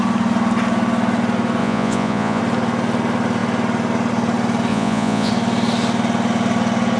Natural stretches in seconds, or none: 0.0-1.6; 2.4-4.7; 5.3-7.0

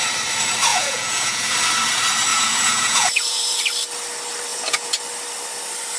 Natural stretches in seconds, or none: 0.0-0.7; 1.5-2.3; 3.6-4.5; 5.0-6.0

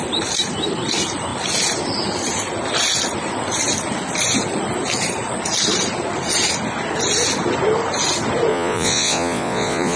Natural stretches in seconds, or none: 0.0-8.5

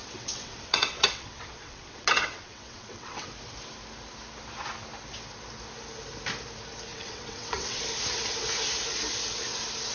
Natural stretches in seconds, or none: 3.3-6.9; 7.8-9.9

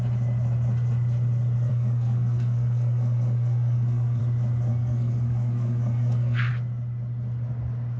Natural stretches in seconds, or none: 0.0-1.7; 4.2-4.7; 6.5-8.0

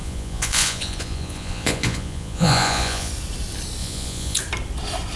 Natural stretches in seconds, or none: 3.1-3.8; 4.4-5.2

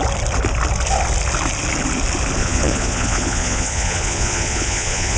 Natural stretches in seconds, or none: 0.0-2.4